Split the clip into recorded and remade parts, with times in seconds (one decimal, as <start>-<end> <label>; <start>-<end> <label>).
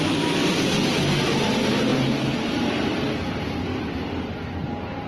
0.0-5.1 recorded